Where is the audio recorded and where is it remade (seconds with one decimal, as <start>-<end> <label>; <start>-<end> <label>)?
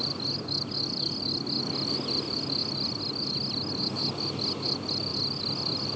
0.0-6.0 recorded